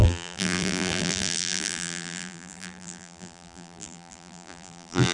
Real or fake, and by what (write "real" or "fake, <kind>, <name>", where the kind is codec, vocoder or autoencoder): fake, vocoder, BigVGAN v2